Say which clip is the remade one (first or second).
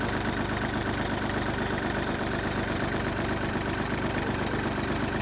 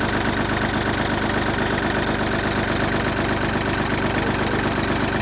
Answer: first